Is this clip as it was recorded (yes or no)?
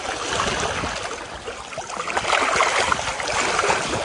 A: yes